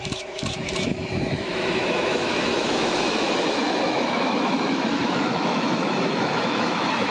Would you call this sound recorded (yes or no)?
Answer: no